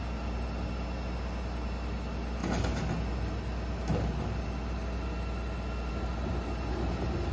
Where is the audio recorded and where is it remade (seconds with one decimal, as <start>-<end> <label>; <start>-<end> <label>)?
0.0-7.3 recorded